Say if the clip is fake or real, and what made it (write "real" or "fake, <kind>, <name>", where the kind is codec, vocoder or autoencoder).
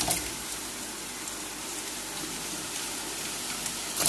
real